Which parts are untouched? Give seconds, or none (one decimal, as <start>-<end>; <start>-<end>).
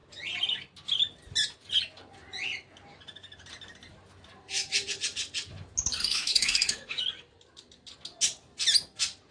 0.0-6.0; 7.0-9.3